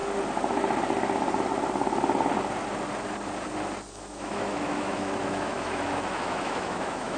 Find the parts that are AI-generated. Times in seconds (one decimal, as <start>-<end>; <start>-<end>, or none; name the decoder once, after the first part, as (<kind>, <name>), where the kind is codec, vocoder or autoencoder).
3.9-7.2 (autoencoder, DAC-VAE)